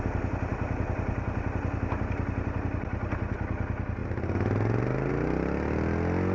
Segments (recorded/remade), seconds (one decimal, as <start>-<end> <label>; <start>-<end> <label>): 0.0-6.3 recorded